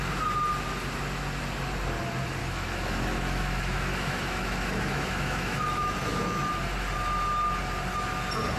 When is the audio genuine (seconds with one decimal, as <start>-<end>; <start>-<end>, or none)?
0.0-2.4; 6.5-8.6